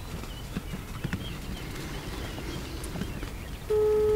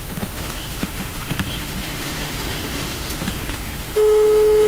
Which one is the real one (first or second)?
first